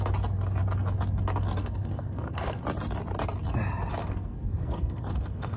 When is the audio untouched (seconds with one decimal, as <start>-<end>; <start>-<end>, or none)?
0.0-1.6; 2.6-4.0